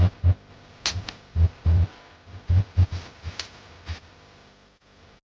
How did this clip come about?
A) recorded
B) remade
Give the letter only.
A